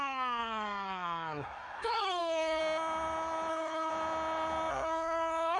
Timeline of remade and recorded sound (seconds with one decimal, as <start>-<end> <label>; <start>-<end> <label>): 0.0-2.6 remade; 2.6-3.5 recorded; 3.5-3.9 remade; 3.9-4.7 recorded; 4.7-5.6 remade